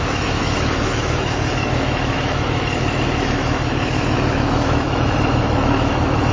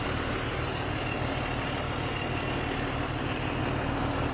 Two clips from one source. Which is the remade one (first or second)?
first